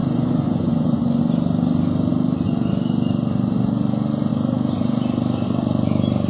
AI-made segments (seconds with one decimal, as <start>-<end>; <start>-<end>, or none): 0.0-1.2